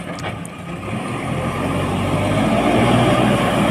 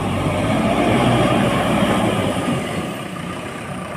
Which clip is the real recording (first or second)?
first